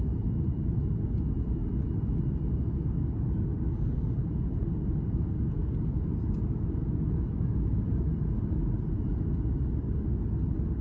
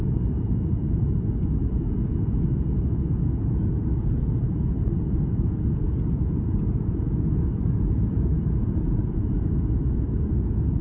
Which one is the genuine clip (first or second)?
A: first